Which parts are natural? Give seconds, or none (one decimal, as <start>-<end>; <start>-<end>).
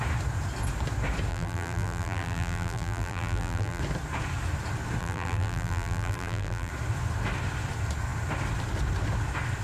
0.0-1.3; 3.8-5.0; 6.7-9.6